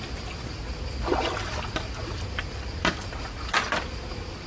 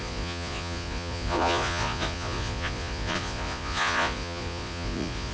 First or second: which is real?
first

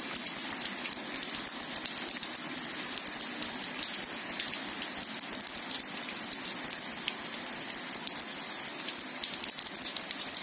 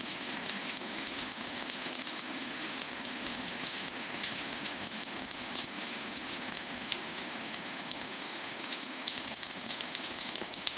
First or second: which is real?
first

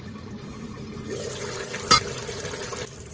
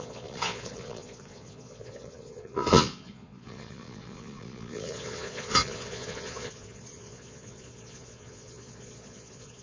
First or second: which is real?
first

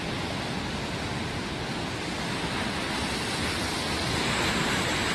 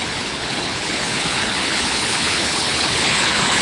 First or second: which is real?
first